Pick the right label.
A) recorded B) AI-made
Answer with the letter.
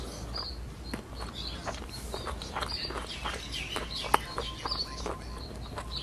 A